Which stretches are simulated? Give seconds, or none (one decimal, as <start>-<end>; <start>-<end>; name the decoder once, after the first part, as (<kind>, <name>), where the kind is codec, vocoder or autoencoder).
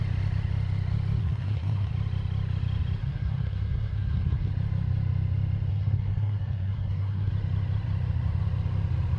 1.2-1.9 (codec, SNAC); 3.0-4.5; 5.7-7.3